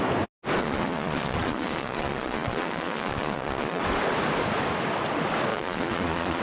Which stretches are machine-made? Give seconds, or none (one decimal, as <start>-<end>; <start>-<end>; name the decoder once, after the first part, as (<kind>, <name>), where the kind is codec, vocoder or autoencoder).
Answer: 0.6-3.8 (vocoder, Vocos); 5.5-6.4